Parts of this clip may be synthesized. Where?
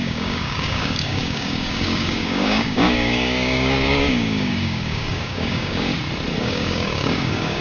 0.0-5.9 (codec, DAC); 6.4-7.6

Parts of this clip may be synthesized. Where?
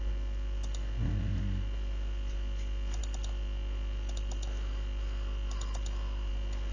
none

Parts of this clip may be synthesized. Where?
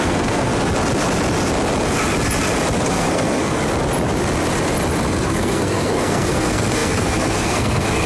0.0-0.5 (codec, SNAC); 2.9-3.6; 5.2-8.1